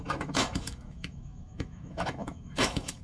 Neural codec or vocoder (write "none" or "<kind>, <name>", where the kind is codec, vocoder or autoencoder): autoencoder, DAC-VAE